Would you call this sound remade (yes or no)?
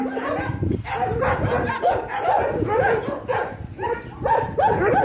no